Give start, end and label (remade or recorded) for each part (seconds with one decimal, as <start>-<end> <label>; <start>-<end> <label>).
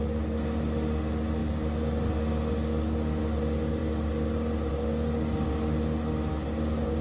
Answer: 0.0-7.0 recorded